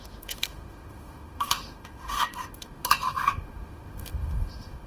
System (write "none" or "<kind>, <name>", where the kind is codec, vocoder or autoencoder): autoencoder, DAC-VAE